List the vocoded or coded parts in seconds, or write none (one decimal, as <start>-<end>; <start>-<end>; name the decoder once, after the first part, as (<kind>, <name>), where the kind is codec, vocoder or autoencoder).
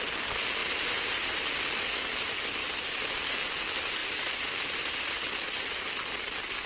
0.6-1.5 (vocoder, BigVGAN v2); 4.0-5.7